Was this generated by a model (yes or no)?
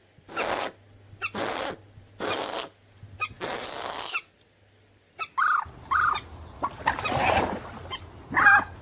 no